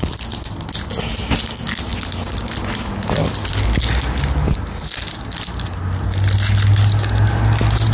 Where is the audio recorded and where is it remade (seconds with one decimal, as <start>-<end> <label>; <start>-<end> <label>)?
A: 0.0-7.9 recorded